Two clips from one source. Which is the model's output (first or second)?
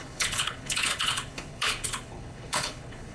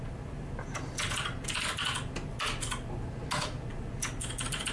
first